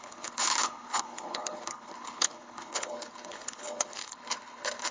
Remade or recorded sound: remade